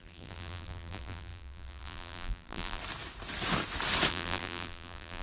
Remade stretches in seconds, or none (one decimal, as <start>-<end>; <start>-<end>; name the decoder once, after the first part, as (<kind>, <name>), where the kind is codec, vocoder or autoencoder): 0.0-2.8 (vocoder, BigVGAN v2); 4.1-5.2